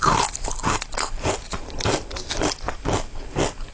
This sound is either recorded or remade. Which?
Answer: recorded